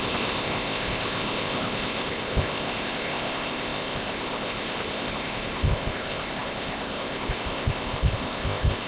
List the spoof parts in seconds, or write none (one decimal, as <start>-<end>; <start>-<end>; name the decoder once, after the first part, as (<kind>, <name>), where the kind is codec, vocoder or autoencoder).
0.0-8.9 (codec, ZipCodec)

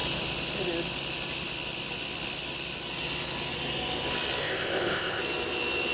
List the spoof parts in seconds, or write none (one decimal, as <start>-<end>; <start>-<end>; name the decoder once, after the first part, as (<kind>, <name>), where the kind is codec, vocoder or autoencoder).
4.4-5.2 (codec, ZipCodec)

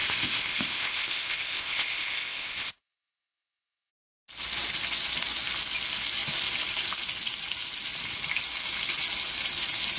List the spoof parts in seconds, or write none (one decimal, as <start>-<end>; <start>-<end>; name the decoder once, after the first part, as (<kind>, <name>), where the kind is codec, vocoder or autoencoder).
0.0-3.9 (codec, ZipCodec)

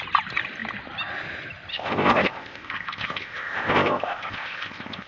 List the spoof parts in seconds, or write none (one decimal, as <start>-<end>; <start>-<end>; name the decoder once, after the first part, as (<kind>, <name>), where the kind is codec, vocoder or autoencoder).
1.7-5.1 (codec, ZipCodec)